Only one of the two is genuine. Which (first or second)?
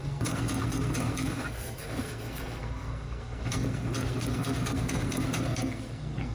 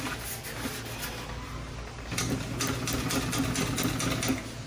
second